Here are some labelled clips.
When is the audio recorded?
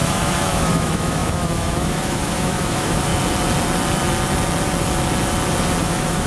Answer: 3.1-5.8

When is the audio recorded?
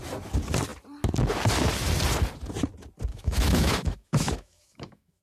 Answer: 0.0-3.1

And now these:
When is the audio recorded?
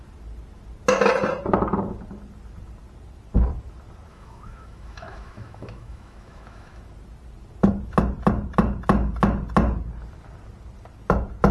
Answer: 0.0-4.1; 6.8-11.5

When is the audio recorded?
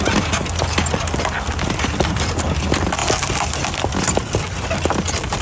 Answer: 0.0-5.4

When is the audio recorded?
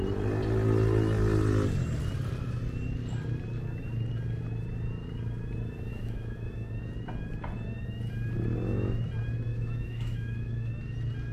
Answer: 0.0-5.9; 6.7-9.5; 10.7-11.3